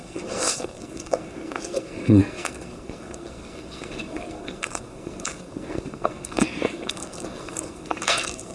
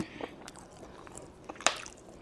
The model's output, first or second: first